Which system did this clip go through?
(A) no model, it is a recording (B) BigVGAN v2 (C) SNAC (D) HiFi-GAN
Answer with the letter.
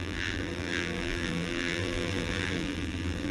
B